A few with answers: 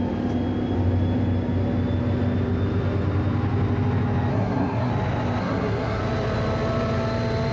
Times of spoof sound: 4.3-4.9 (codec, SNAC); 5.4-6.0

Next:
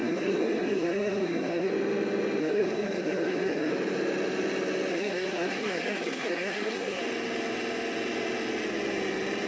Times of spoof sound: 0.0-1.7 (codec, SNAC); 2.4-3.7; 4.9-7.0

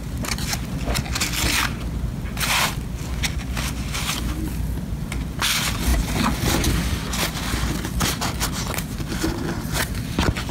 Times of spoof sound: none